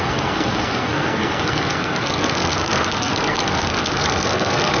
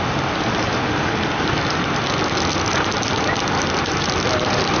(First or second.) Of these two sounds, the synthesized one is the first